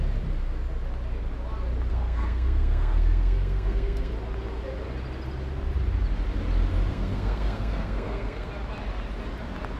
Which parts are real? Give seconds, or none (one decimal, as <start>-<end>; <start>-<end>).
0.0-1.9; 4.1-6.9; 8.5-9.8